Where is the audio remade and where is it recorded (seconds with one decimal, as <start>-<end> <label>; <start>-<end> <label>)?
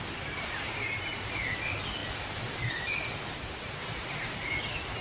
0.0-5.0 recorded